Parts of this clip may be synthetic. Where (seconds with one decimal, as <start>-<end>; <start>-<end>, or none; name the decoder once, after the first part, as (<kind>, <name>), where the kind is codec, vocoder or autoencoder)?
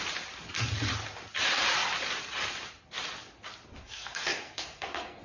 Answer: 3.8-5.2 (codec, SNAC)